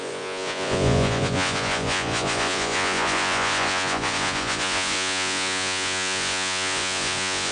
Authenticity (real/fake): fake